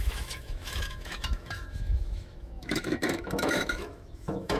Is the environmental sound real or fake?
fake